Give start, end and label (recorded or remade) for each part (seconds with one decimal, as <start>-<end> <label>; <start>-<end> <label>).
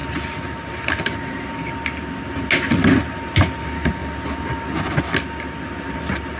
0.0-6.4 recorded